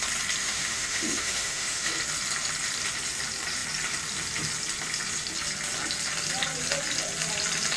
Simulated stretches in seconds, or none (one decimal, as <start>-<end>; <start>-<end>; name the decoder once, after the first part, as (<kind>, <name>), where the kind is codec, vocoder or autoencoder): 0.4-1.9 (autoencoder, DAC-VAE)